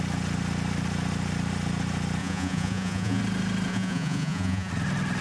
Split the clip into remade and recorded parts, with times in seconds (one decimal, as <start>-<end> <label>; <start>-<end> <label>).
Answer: 0.0-2.2 recorded; 2.2-3.2 remade; 3.2-3.7 recorded; 3.7-4.7 remade; 4.7-5.2 recorded